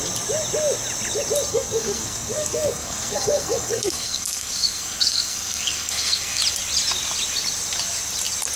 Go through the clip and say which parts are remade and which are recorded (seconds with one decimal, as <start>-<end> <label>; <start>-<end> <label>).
0.0-1.5 recorded; 1.5-6.4 remade; 6.4-8.6 recorded